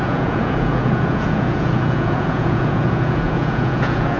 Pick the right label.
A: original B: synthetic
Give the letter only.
B